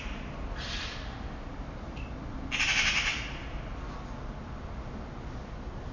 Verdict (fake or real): real